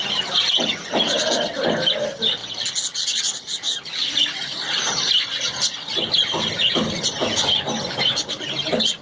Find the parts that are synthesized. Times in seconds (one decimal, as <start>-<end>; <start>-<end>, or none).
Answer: none